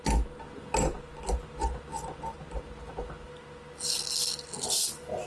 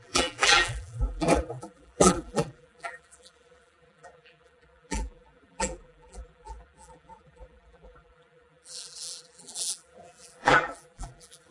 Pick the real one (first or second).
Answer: first